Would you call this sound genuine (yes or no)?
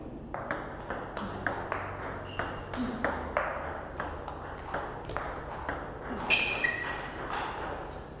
yes